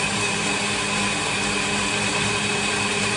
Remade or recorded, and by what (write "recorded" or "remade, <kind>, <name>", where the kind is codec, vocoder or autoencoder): recorded